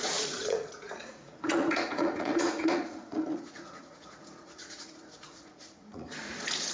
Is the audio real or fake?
fake